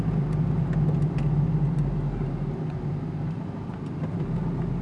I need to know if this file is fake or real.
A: real